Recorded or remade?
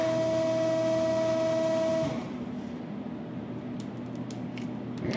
recorded